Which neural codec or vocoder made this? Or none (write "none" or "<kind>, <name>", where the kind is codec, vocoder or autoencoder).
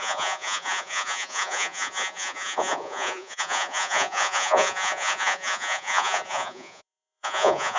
vocoder, Vocos